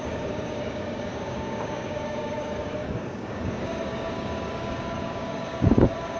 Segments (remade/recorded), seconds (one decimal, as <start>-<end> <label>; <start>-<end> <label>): 0.0-6.2 remade